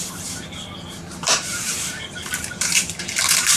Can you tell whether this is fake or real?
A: fake